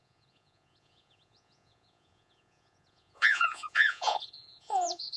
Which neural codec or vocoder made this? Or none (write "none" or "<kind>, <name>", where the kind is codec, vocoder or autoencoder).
vocoder, Vocos